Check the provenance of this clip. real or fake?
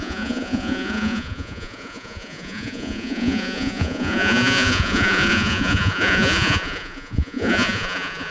fake